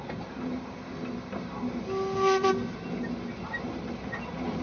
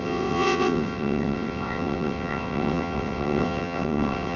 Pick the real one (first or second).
first